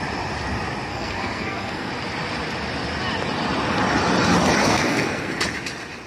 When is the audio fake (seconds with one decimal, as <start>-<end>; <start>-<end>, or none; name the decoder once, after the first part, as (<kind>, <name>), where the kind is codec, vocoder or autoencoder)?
0.9-1.9 (codec, SNAC); 4.6-5.4